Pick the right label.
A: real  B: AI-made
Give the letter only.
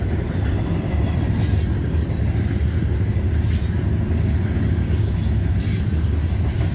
A